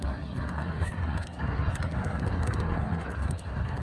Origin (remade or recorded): remade